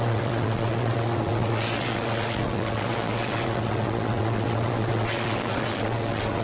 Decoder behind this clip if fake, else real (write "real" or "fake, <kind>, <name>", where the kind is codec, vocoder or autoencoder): fake, vocoder, WaveNeXt